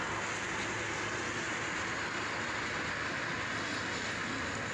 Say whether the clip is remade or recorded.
recorded